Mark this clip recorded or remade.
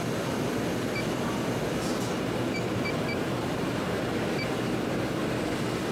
recorded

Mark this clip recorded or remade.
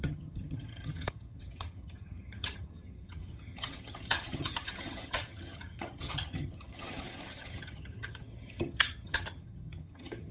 remade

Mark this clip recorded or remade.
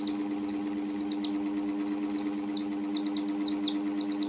recorded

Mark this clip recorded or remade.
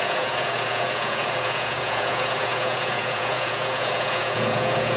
remade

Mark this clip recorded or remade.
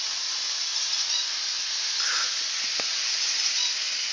recorded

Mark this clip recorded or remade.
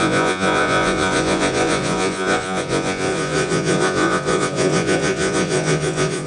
remade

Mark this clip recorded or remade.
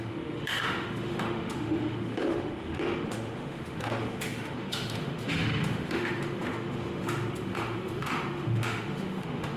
remade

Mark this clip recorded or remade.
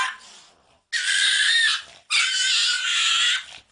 recorded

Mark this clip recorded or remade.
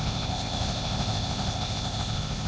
remade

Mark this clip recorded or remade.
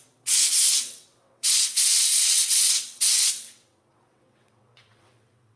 remade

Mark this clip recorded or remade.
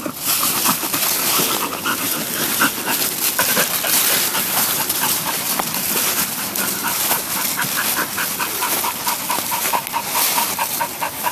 recorded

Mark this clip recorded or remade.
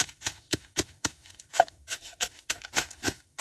remade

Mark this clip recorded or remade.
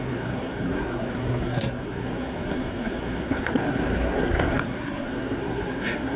remade